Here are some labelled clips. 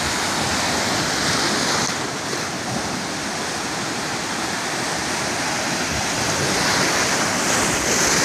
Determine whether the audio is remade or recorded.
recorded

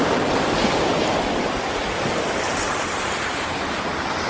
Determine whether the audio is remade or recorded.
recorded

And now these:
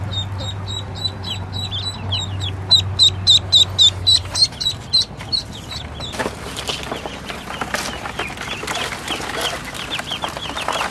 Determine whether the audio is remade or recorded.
recorded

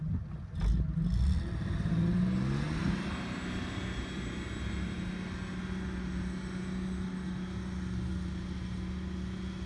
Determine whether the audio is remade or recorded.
recorded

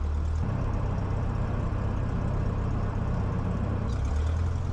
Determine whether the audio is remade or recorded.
recorded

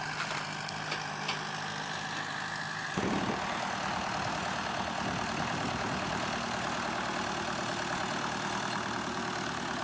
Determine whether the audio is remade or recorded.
recorded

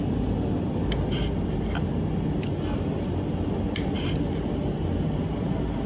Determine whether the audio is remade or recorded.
recorded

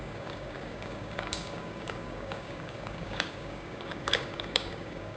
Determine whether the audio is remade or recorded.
remade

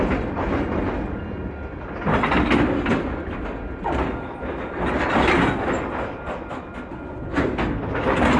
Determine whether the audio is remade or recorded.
recorded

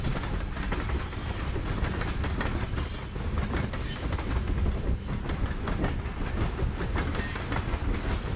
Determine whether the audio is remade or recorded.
recorded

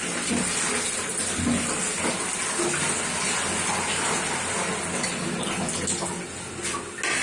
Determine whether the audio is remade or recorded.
recorded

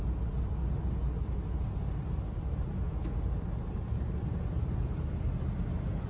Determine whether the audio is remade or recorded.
recorded